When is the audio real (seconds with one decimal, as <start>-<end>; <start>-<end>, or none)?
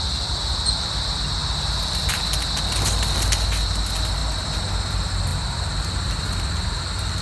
0.0-5.3